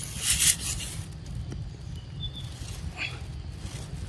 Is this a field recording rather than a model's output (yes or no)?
yes